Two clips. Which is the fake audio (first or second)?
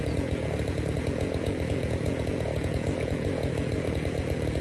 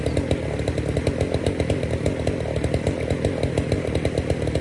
first